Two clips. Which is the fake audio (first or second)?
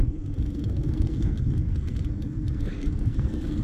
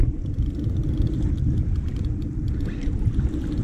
first